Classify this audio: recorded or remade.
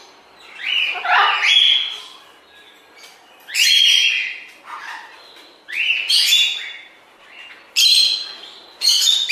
recorded